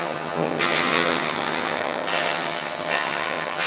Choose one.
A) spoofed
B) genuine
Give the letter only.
A